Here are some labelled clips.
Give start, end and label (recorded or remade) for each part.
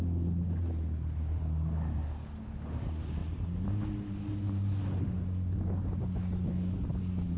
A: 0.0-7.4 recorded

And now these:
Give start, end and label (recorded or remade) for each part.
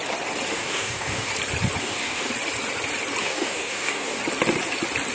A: 0.0-0.5 recorded; 0.5-1.3 remade; 1.3-1.8 recorded; 1.8-2.3 remade; 2.3-3.2 recorded; 3.2-4.2 remade; 4.2-5.1 recorded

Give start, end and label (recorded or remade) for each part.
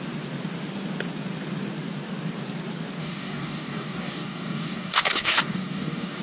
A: 0.0-3.0 recorded; 3.0-6.2 remade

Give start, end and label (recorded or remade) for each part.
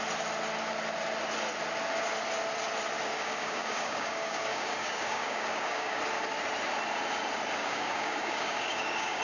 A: 0.0-3.1 recorded; 3.1-6.0 remade; 6.0-7.6 recorded; 7.6-9.2 remade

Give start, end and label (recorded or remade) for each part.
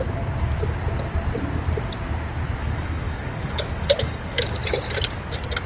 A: 0.0-2.6 recorded; 2.6-4.6 remade; 4.6-5.7 recorded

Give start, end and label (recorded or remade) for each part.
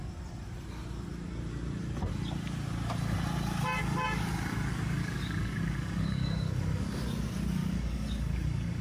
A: 0.0-3.8 recorded; 3.8-7.0 remade; 7.0-7.6 recorded; 7.6-8.8 remade